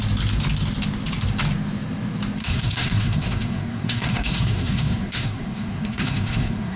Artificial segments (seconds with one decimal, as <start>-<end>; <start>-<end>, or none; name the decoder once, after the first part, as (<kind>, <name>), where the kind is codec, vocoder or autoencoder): 2.4-6.8 (codec, SNAC)